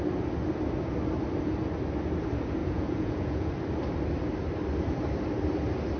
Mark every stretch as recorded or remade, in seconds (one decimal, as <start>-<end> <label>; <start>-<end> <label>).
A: 0.0-2.6 recorded; 2.6-3.5 remade; 3.5-6.0 recorded